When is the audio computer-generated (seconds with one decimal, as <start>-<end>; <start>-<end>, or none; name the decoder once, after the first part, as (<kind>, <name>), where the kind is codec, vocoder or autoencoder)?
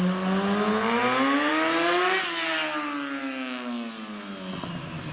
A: none